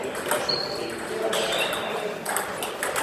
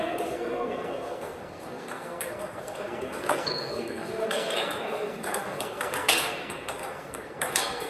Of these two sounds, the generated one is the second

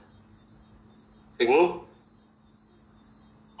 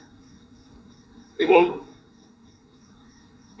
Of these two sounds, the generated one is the second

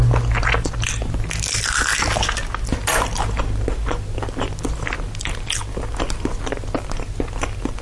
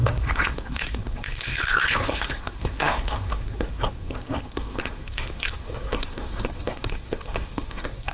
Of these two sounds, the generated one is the second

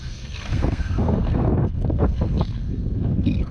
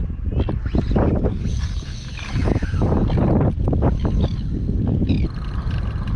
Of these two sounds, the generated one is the first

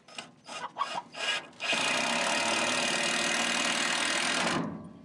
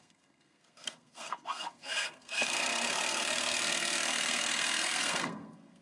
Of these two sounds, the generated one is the second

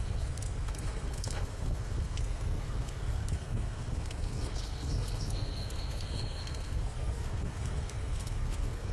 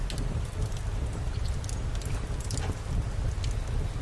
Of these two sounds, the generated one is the first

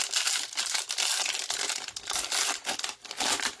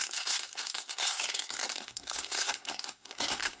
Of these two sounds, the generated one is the second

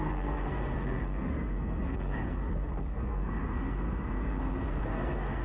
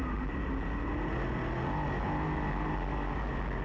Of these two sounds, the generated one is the first